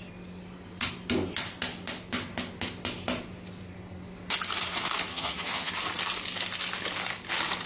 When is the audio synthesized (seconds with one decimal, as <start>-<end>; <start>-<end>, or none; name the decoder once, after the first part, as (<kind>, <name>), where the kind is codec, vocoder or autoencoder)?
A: 5.1-5.7 (vocoder, HiFi-GAN)